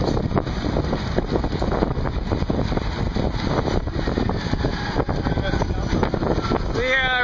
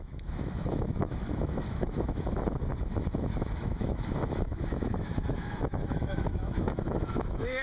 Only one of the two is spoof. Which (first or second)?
second